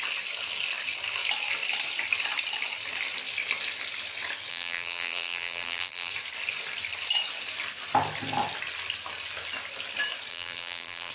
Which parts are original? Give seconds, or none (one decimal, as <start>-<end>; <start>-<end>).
0.0-4.5; 6.1-10.3